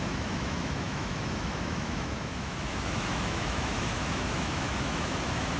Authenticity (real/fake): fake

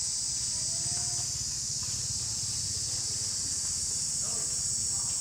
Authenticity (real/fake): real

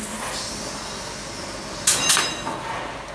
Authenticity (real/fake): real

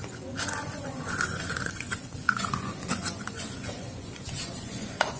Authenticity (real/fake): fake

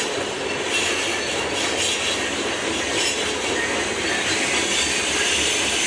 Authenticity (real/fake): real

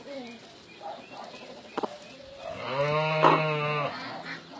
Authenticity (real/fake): real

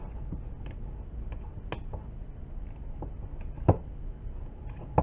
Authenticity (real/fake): real